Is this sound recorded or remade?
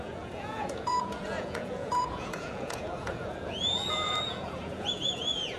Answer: remade